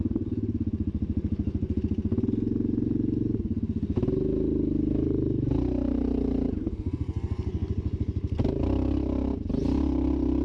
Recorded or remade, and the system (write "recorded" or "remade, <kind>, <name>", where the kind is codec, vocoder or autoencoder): recorded